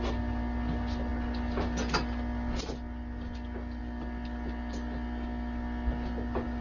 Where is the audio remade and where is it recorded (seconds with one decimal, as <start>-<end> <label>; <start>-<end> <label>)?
0.0-6.6 recorded